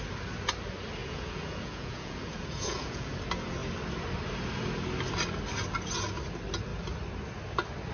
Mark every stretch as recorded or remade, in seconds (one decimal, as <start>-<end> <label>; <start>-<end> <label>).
0.0-1.0 recorded; 1.0-3.2 remade; 3.2-7.9 recorded